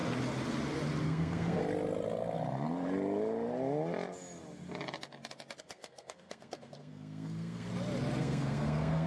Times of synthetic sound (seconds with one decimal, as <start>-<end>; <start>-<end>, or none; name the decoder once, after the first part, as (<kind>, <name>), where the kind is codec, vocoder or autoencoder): 1.0-1.6 (codec, SNAC); 5.6-7.7; 8.2-9.1